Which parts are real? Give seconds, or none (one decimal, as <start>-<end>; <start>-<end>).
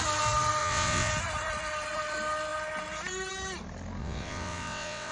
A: 0.0-0.6; 1.1-4.0